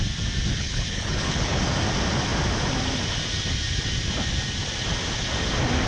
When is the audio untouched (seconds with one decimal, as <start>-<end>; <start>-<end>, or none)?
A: 0.0-0.5; 1.6-5.9